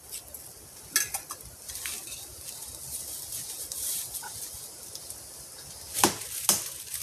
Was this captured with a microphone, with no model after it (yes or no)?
yes